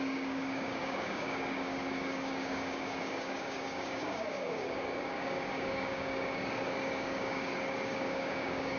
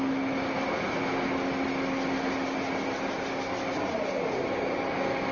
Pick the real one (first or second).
second